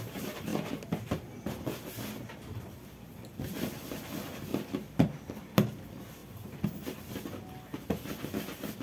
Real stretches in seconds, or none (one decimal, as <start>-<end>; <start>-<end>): 0.5-2.3